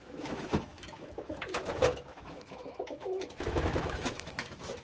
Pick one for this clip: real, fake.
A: fake